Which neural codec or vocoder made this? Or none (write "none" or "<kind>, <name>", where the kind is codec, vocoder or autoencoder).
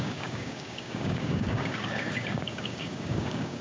codec, DAC